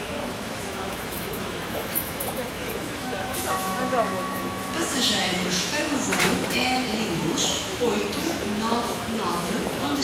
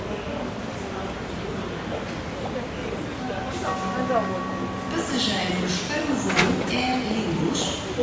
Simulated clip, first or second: first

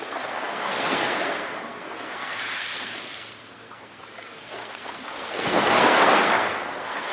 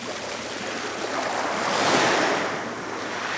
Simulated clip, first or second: first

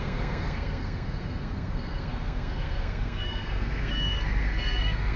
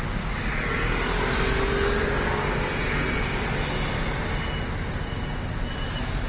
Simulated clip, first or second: first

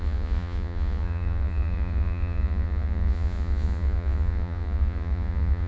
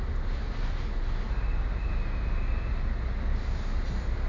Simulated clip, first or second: first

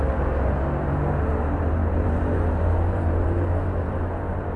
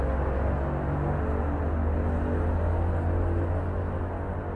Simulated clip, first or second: first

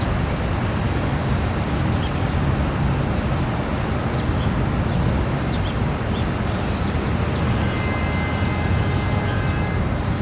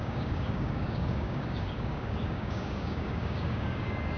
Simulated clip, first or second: second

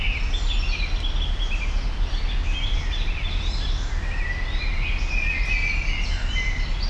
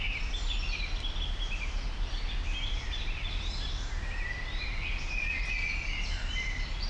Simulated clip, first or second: second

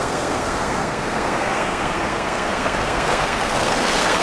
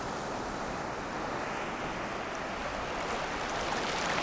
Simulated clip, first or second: first